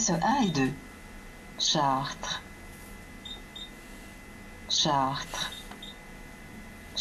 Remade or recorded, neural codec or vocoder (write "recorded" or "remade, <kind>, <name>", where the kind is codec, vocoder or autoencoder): recorded